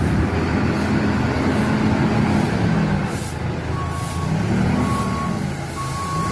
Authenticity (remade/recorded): recorded